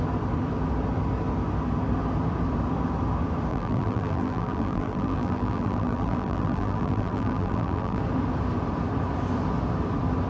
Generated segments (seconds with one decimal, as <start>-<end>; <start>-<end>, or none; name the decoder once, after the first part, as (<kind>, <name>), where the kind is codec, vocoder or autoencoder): 3.5-8.0 (vocoder, BigVGAN v2)